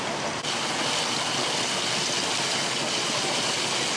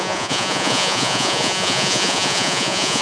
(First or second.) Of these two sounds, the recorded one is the first